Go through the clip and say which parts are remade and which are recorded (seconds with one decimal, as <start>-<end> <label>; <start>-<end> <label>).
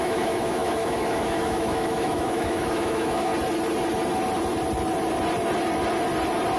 0.0-3.3 remade; 3.3-6.6 recorded